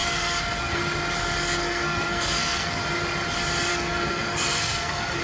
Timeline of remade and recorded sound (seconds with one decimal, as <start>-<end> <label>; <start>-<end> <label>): 0.0-0.8 remade; 0.8-1.6 recorded; 1.6-2.8 remade; 2.8-3.7 recorded; 3.7-5.2 remade